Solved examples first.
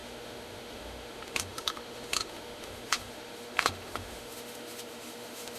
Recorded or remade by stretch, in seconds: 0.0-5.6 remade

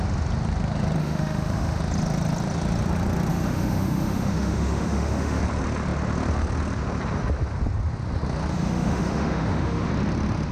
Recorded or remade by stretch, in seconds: 0.0-1.0 recorded; 1.0-1.8 remade; 1.8-3.3 recorded; 3.3-5.4 remade; 5.4-8.5 recorded; 8.5-9.9 remade; 9.9-10.5 recorded

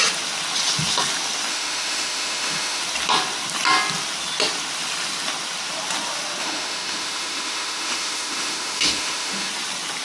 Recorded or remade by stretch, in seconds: 0.0-1.5 recorded; 1.5-2.8 remade; 2.8-6.4 recorded; 6.4-9.5 remade; 9.5-10.0 recorded

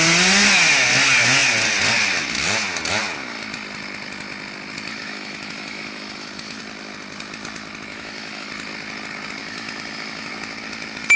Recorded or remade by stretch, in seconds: 0.0-4.9 recorded; 4.9-6.6 remade; 6.6-7.9 recorded; 7.9-8.5 remade; 8.5-9.4 recorded; 9.4-10.3 remade; 10.3-11.2 recorded

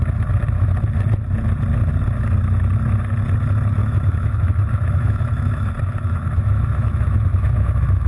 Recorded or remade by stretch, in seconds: 0.0-3.8 recorded; 3.8-8.1 remade

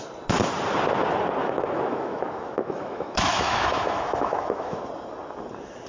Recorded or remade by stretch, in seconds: 0.0-1.4 recorded; 1.4-4.8 remade; 4.8-5.9 recorded

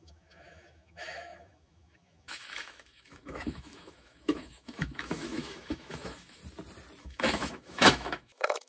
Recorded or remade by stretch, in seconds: 0.0-6.4 remade; 6.4-7.0 recorded; 7.0-8.7 remade